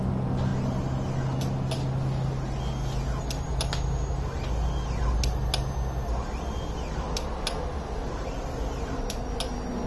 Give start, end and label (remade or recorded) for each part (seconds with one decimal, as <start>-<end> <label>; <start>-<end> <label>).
0.0-9.9 recorded